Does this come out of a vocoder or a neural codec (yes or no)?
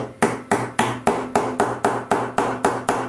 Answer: no